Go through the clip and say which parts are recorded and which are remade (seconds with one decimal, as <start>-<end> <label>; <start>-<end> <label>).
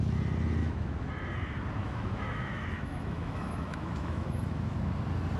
0.0-0.6 recorded; 0.6-1.1 remade; 1.1-1.8 recorded; 1.8-4.8 remade; 4.8-5.4 recorded